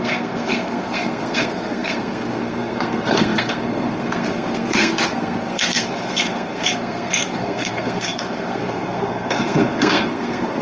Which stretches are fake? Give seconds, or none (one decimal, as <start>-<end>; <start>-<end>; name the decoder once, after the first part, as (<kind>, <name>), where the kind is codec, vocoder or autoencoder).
0.0-10.6 (codec, SNAC)